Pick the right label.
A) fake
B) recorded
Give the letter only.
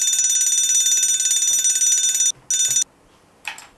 B